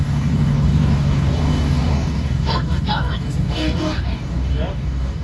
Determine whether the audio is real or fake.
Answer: fake